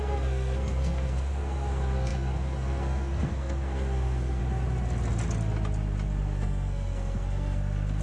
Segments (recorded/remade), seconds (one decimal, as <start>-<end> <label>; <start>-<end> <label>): 0.0-4.4 remade; 4.4-6.2 recorded; 6.2-8.0 remade